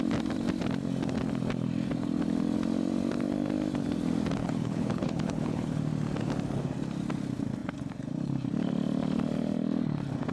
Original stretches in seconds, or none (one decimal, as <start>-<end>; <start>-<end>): 0.0-4.4; 5.8-10.3